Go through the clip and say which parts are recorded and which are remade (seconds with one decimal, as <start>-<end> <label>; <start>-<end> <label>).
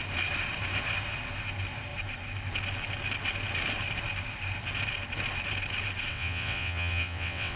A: 0.0-6.1 recorded; 6.1-7.6 remade